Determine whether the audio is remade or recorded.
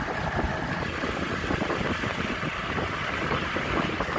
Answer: recorded